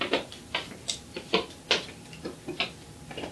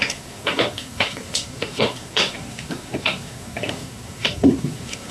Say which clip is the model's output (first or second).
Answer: second